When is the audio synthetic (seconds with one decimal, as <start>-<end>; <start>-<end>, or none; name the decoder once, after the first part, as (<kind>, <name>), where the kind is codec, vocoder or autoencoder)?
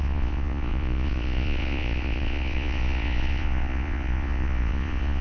0.0-5.2 (vocoder, Vocos)